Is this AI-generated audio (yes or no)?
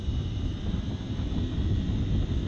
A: no